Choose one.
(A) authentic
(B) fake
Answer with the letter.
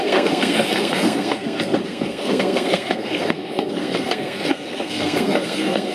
B